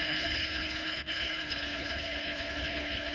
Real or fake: fake